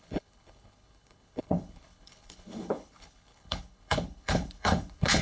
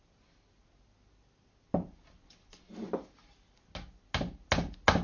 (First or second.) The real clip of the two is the second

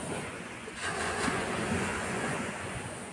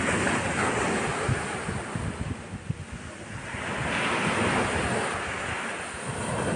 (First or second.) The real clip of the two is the second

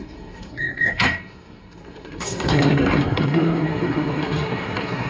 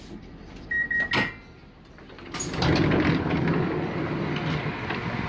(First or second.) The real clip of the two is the second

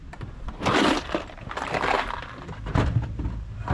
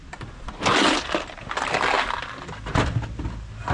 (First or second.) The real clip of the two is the second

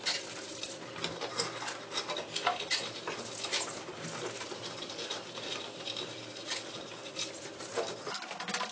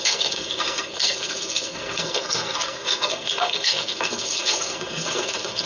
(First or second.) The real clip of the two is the first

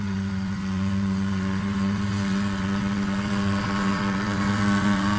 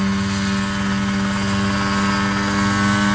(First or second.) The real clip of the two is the second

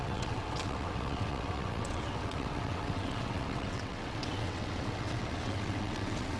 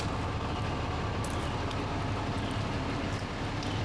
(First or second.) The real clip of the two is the second